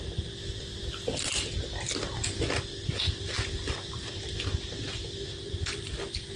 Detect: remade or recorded recorded